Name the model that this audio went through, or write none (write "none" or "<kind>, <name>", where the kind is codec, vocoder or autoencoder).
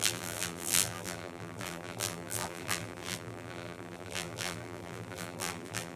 vocoder, BigVGAN v2